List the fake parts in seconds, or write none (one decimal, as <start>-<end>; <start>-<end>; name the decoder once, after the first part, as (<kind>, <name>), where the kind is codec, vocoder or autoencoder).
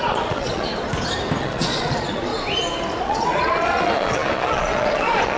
0.0-0.7 (vocoder, Vocos); 1.4-2.3; 2.9-5.4